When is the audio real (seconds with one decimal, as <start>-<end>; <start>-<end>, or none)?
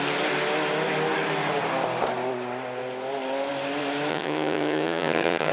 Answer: 0.0-4.1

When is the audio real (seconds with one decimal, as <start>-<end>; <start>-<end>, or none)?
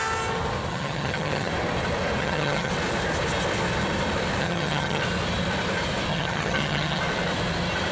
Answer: 0.0-0.7; 1.5-2.2; 2.7-4.4; 5.0-6.1; 7.0-7.9